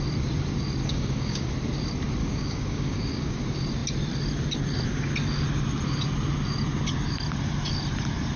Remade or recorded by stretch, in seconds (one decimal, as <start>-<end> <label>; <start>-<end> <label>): 0.0-0.8 recorded; 0.8-1.5 remade; 1.5-2.2 recorded; 2.2-3.4 remade; 3.4-8.4 recorded